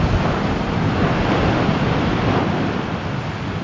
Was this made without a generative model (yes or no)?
yes